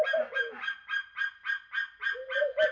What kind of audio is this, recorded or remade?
recorded